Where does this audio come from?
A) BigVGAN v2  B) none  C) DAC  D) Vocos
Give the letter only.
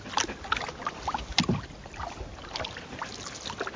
B